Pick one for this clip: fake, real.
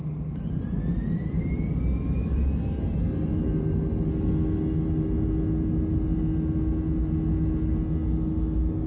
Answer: real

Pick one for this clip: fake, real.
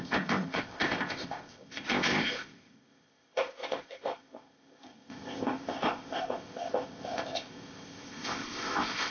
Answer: fake